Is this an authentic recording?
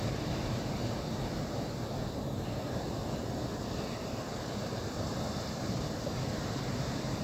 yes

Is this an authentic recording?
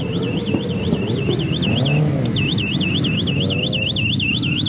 yes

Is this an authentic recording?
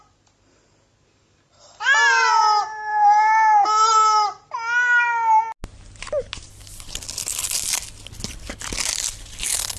yes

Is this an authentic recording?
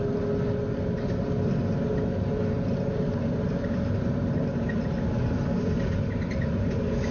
yes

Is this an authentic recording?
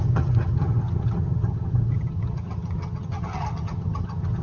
no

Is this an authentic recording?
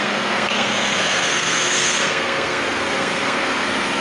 no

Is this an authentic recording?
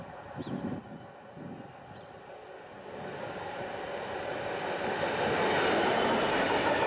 yes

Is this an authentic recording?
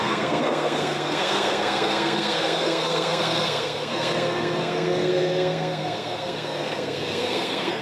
no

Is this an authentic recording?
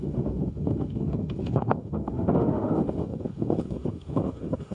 no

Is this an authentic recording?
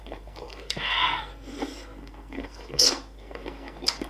no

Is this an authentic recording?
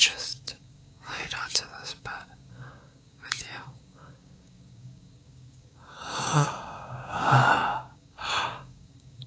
no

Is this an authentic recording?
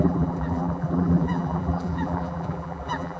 no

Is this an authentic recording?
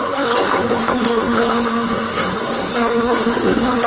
no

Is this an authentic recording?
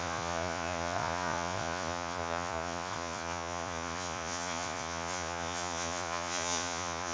no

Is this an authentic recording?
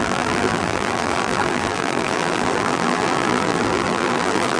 no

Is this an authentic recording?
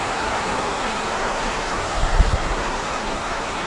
no